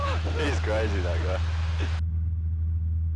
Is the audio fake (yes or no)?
no